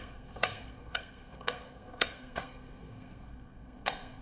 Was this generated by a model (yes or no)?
yes